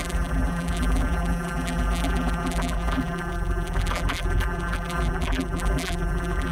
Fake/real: fake